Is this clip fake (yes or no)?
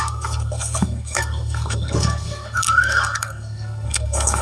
yes